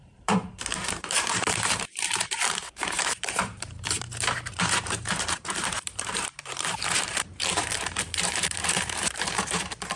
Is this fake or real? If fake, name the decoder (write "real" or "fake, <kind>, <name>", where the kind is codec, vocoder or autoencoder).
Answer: fake, vocoder, BigVGAN v2